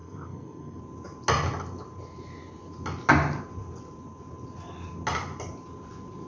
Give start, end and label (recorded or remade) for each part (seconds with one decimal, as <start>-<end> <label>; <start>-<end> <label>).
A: 0.0-0.8 remade; 0.8-6.3 recorded